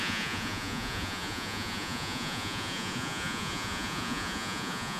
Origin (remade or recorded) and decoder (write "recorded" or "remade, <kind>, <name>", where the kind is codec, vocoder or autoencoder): remade, vocoder, Vocos